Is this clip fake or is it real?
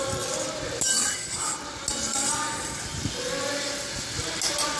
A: real